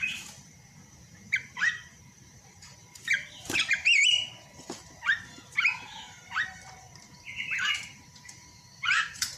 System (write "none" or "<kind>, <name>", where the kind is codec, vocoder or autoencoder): vocoder, BigVGAN v2